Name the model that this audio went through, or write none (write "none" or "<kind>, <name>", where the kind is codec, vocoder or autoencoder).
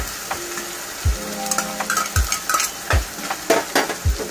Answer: none